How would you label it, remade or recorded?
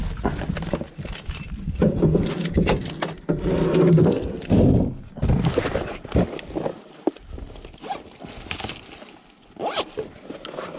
recorded